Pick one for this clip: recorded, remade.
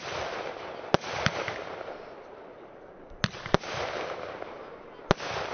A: recorded